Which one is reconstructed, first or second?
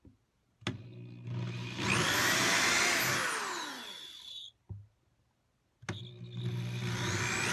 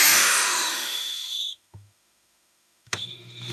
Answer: second